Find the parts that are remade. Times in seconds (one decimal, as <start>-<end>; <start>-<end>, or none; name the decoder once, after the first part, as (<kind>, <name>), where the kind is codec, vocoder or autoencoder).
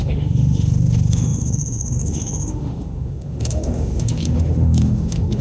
0.0-5.4 (autoencoder, DAC-VAE)